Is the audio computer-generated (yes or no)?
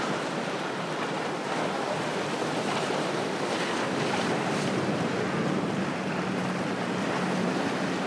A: no